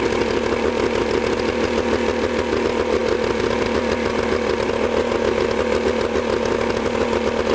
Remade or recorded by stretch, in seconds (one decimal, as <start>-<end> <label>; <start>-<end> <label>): 0.0-7.5 recorded